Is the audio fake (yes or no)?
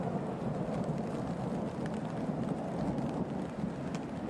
no